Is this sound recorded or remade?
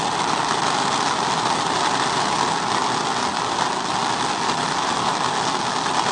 recorded